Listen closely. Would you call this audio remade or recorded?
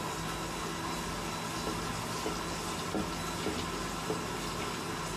recorded